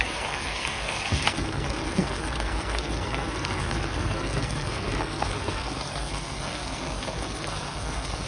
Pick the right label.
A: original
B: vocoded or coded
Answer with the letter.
B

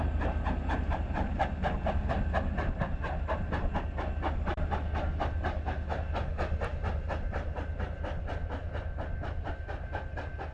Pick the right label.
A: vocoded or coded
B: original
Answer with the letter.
B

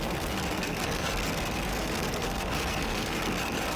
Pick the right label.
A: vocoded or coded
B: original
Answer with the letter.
A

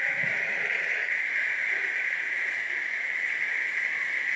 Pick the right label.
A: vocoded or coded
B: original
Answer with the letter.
B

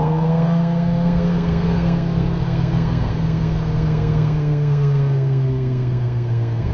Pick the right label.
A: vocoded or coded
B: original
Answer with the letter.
A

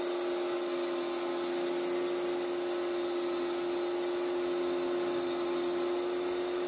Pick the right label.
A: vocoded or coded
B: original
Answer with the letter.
B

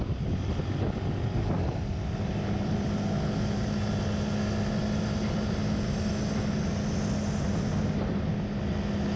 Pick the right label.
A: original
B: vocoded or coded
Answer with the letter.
A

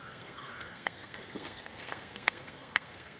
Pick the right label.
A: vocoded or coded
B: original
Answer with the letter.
A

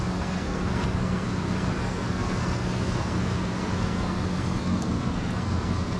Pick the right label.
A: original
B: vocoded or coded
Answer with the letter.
B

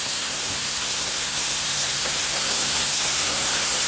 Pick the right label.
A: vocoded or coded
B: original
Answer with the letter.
A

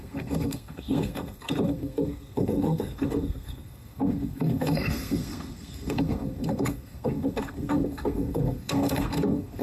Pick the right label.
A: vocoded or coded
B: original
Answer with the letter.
A